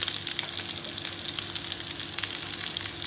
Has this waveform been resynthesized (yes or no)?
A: no